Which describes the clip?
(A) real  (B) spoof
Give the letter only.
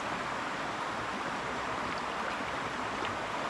A